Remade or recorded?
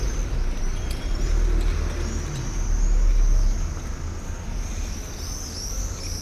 recorded